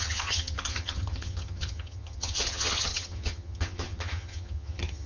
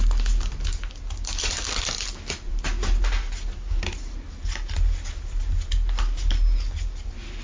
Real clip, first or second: second